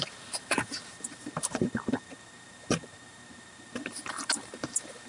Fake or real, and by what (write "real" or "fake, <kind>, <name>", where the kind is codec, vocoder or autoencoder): fake, vocoder, BigVGAN v2